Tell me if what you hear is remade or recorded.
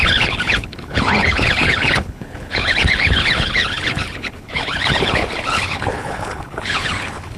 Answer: remade